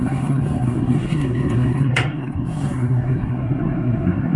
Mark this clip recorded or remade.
remade